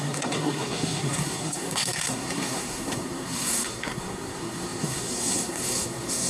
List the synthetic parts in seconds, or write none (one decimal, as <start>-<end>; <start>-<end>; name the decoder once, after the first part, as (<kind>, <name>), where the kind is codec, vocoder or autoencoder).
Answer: 0.0-6.3 (codec, SNAC)